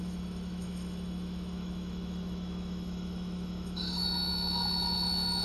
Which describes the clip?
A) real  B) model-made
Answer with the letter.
B